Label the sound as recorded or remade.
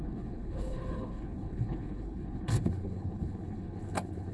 remade